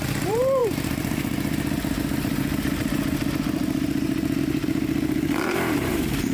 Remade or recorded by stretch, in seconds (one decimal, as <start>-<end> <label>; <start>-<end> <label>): 0.0-6.3 remade